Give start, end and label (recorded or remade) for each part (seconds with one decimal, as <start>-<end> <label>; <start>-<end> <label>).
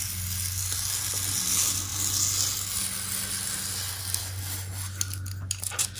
0.0-6.0 recorded